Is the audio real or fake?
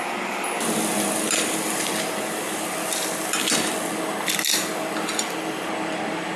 real